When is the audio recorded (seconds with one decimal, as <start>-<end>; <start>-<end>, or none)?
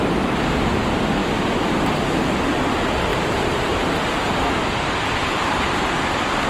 0.0-3.1; 3.8-6.5